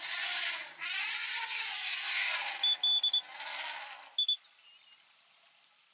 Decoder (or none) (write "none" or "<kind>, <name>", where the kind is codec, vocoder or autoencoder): none